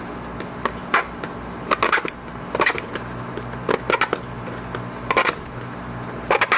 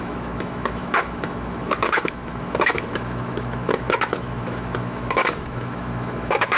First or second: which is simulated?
second